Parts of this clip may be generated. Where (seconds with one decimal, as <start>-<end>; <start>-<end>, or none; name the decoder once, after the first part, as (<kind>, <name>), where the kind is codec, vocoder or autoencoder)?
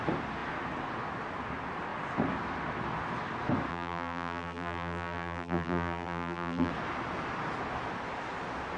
3.7-6.7 (vocoder, BigVGAN v2)